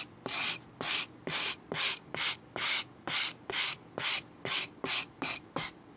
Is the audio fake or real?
real